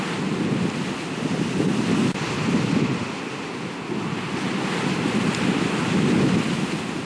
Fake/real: real